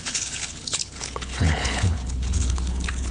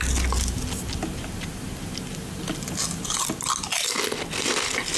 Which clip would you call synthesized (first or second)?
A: first